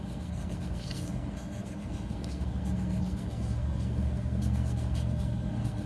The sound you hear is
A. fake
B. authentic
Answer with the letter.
A